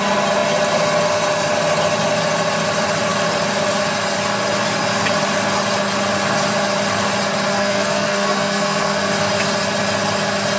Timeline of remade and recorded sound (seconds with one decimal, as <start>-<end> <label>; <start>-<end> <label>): 0.0-7.5 recorded; 7.5-9.1 remade; 9.1-10.6 recorded